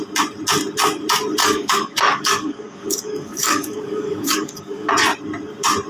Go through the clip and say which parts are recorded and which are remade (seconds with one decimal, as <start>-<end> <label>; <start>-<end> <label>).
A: 0.0-1.4 recorded; 1.4-4.9 remade; 4.9-5.9 recorded